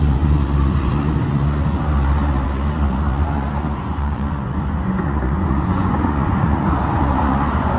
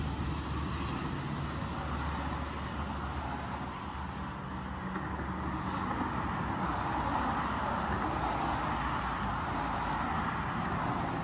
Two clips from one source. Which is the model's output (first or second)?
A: first